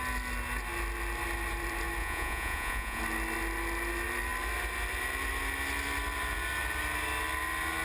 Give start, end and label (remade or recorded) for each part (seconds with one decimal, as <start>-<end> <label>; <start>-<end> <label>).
0.0-2.0 recorded; 2.0-3.0 remade; 3.0-7.8 recorded